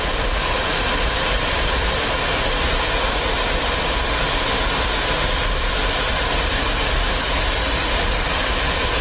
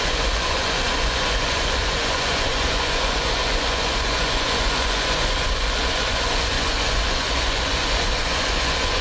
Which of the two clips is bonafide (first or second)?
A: first